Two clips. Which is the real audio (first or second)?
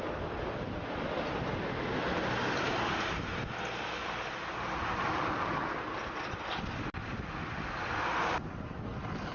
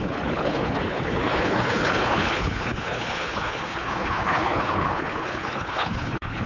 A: first